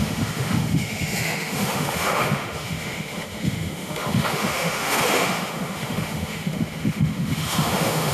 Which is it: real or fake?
fake